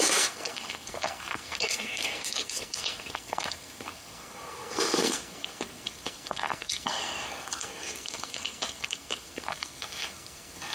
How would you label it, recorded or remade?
remade